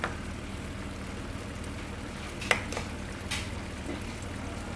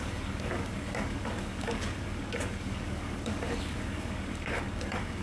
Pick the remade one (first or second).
second